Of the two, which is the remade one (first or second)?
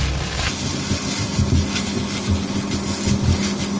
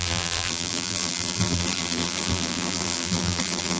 second